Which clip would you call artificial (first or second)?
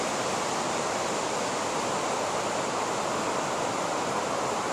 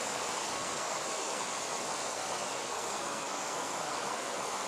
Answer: second